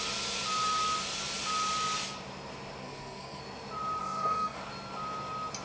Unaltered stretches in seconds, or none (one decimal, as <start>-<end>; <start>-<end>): 0.0-2.8; 3.4-4.0; 4.6-5.6